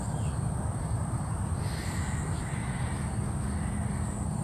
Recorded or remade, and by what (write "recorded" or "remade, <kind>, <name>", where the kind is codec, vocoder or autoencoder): recorded